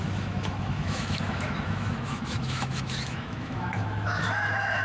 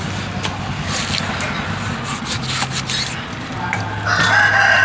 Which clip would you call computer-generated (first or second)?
first